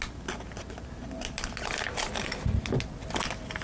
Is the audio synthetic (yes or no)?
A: no